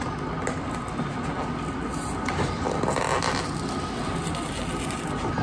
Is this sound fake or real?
real